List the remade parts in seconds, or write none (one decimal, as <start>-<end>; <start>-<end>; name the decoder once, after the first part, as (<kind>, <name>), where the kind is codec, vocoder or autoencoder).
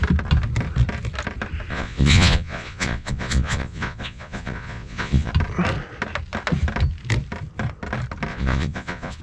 1.7-5.3 (vocoder, Vocos); 8.3-9.2